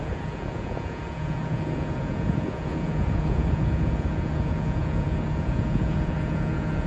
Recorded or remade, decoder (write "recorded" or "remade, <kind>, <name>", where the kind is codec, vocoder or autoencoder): remade, vocoder, Vocos